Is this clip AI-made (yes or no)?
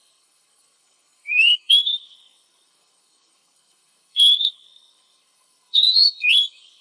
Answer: yes